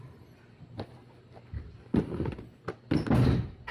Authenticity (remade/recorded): recorded